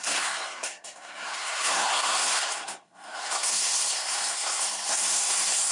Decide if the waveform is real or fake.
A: fake